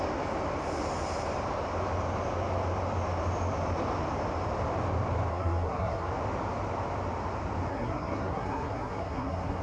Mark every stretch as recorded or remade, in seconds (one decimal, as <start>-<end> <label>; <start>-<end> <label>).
0.0-5.3 recorded; 5.3-6.1 remade; 6.1-7.7 recorded; 7.7-9.6 remade